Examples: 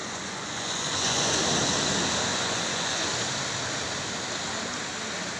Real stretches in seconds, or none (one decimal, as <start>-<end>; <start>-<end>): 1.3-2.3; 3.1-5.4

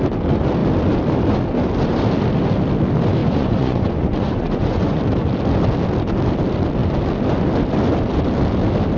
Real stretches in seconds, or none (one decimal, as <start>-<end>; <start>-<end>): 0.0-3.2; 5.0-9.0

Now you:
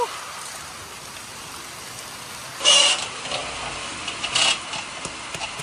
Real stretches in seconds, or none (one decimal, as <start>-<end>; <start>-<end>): 0.0-5.6